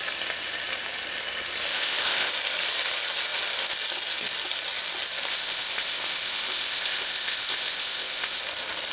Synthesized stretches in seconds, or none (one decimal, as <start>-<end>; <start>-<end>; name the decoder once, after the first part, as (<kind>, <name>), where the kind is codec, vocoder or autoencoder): 1.7-2.3 (codec, ZipCodec); 5.3-8.4